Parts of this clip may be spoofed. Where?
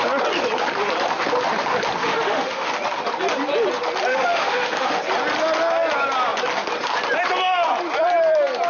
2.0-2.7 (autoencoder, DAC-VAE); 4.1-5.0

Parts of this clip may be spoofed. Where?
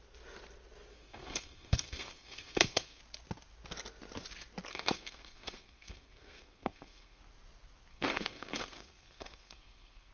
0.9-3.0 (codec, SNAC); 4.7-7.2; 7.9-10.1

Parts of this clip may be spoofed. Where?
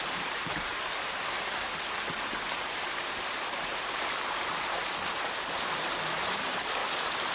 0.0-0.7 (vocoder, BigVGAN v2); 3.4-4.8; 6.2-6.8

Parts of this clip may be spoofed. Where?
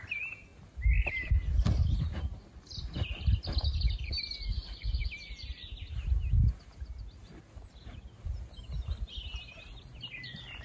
none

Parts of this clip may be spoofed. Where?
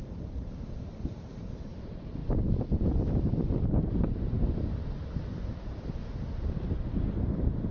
0.0-2.2 (vocoder, BigVGAN v2); 3.8-6.0